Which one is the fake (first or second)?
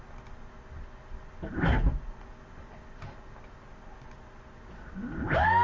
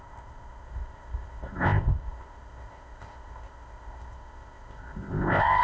second